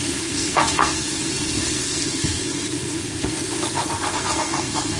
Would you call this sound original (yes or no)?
no